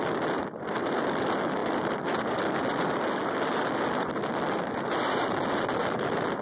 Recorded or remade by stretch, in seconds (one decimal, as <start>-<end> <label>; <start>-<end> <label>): 0.0-6.4 recorded